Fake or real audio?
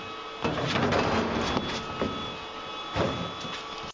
real